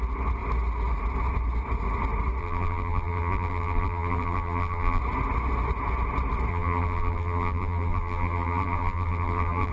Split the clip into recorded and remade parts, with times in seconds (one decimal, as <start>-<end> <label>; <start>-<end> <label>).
0.0-2.4 recorded; 2.4-5.0 remade; 5.0-6.5 recorded; 6.5-9.7 remade